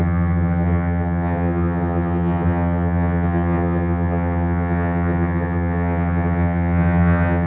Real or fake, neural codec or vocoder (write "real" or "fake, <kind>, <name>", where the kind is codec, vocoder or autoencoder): fake, vocoder, HiFi-GAN